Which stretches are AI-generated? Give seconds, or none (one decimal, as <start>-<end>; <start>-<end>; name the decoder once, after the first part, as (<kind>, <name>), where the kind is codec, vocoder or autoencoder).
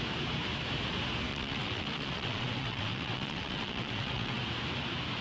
1.3-4.4 (vocoder, WaveNeXt)